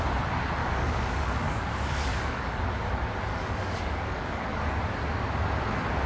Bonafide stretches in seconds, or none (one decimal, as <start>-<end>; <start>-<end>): 0.0-0.6; 2.6-3.3; 4.8-6.1